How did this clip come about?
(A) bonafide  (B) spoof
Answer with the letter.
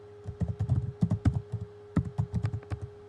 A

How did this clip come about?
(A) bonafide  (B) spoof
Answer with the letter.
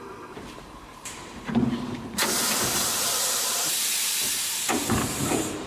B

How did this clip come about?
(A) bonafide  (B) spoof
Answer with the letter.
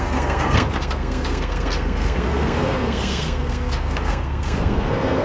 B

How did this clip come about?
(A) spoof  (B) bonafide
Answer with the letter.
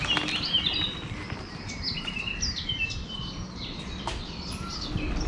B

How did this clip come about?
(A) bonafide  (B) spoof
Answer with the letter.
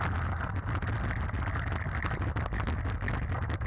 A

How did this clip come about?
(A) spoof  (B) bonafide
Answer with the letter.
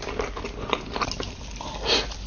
B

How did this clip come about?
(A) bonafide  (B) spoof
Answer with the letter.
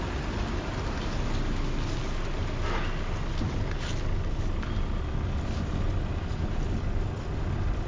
A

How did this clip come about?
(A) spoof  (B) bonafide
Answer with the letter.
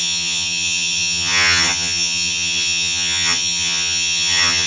A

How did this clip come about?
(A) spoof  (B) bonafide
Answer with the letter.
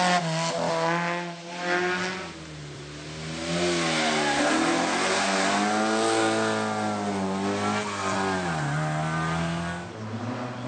B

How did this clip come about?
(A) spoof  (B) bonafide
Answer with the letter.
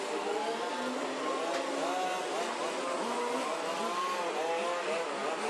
B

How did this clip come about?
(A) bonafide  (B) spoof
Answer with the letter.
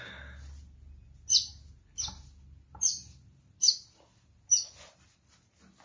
A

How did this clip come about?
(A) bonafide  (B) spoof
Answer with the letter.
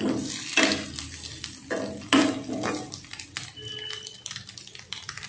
A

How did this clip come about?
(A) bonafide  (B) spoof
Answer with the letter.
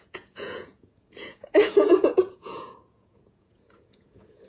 B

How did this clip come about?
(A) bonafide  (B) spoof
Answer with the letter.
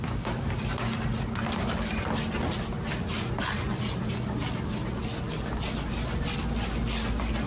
A